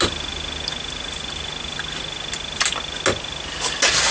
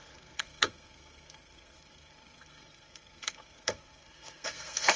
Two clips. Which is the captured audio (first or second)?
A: first